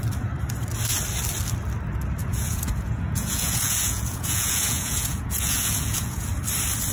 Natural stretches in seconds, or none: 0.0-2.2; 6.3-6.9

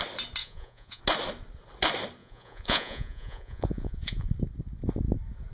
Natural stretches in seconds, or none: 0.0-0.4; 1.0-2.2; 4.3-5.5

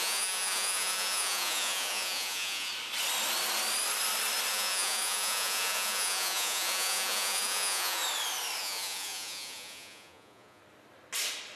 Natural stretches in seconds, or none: 2.7-4.5; 8.0-8.6; 10.6-11.6